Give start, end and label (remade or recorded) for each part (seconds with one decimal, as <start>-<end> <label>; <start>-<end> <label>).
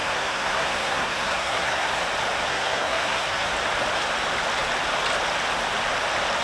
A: 0.0-2.0 remade; 2.0-2.5 recorded; 2.5-3.5 remade; 3.5-6.4 recorded